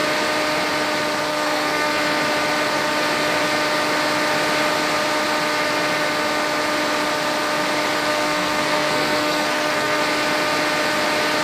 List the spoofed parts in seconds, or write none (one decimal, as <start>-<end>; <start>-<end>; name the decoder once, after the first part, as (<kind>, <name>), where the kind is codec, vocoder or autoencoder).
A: 1.3-1.9 (codec, SNAC); 8.1-10.0